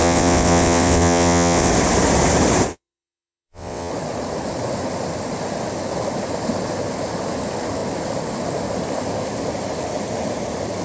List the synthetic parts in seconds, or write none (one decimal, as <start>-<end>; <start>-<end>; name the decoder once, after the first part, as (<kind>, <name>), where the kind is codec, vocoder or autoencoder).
0.0-1.7 (vocoder, WaveNeXt); 2.7-3.9